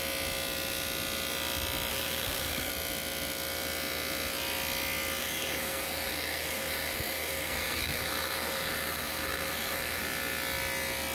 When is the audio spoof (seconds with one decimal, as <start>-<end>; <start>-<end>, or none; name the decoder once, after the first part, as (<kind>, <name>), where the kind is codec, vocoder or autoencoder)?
1.9-2.7 (codec, SNAC); 5.2-10.0